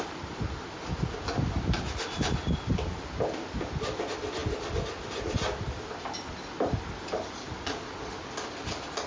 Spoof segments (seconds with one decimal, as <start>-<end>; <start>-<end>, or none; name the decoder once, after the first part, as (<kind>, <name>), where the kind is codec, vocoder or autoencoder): none